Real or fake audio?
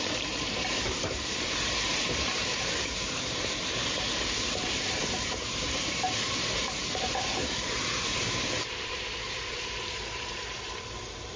fake